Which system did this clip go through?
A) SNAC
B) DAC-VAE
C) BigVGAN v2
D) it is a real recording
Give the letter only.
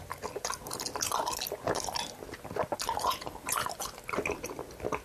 D